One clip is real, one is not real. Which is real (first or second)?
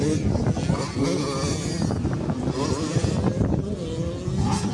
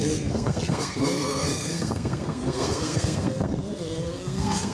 first